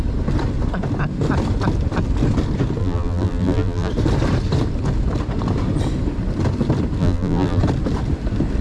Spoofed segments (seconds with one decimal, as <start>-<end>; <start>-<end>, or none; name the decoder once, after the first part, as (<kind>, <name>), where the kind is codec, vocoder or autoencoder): 2.8-3.9 (vocoder, BigVGAN v2); 7.0-7.6